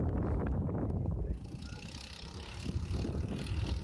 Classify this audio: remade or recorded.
remade